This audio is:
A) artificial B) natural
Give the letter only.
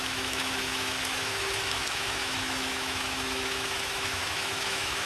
A